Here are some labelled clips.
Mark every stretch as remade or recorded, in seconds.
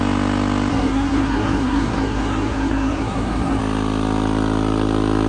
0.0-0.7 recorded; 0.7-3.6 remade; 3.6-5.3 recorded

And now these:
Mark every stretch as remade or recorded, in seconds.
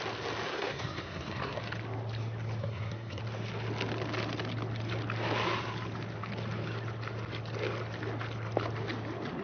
0.0-0.5 recorded; 0.5-1.6 remade; 1.6-2.6 recorded; 2.6-3.2 remade; 3.2-9.4 recorded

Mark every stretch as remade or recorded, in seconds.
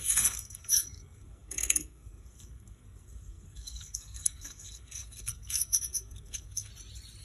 0.0-6.7 remade; 6.7-7.2 recorded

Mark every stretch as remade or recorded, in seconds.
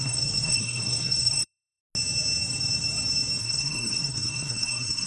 0.0-1.8 remade; 1.8-3.4 recorded; 3.4-5.1 remade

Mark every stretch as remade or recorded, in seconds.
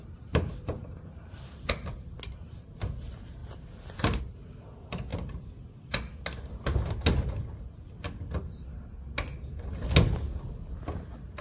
0.0-11.4 recorded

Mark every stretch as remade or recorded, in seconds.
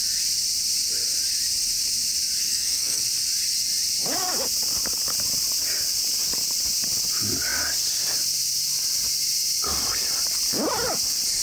0.0-2.4 recorded; 2.4-3.0 remade; 3.0-11.4 recorded